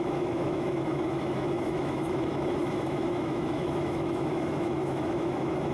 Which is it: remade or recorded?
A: remade